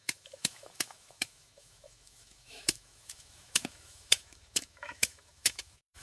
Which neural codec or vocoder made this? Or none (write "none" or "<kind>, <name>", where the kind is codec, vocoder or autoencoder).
autoencoder, DAC-VAE